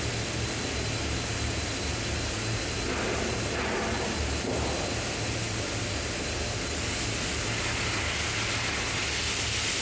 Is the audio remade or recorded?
recorded